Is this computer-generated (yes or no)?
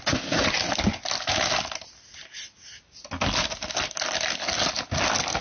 no